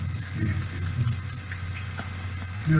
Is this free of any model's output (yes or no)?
yes